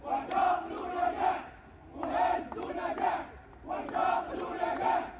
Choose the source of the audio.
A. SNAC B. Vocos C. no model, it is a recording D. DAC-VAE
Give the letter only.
C